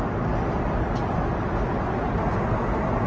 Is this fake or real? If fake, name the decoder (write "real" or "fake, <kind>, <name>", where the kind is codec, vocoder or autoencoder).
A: real